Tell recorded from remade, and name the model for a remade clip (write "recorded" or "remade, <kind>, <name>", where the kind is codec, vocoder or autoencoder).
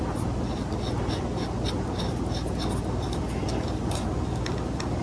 recorded